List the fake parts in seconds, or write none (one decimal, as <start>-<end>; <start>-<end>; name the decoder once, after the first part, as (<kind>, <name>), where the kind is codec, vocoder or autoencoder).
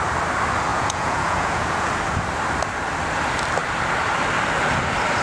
0.7-1.9 (vocoder, Vocos)